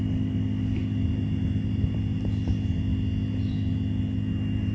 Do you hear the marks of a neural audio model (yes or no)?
no